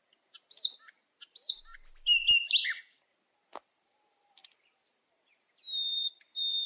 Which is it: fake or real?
real